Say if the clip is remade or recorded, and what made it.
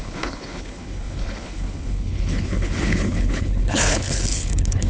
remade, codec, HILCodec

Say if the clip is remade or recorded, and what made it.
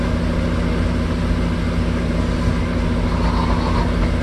recorded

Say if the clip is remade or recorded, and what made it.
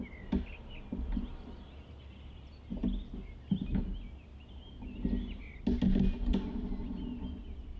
recorded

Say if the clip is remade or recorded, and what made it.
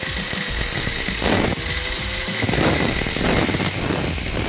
recorded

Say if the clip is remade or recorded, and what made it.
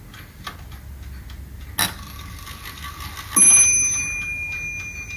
recorded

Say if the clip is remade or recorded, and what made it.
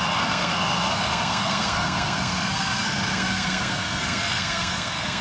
remade, codec, SNAC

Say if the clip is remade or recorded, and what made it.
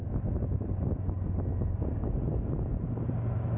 recorded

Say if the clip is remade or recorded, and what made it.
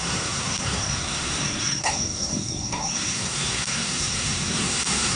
remade, codec, SNAC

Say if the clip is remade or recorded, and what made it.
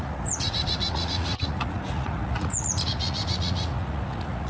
remade, vocoder, Vocos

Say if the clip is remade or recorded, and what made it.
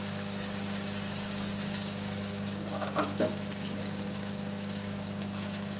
remade, codec, DAC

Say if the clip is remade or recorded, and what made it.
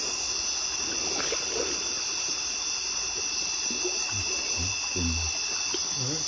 recorded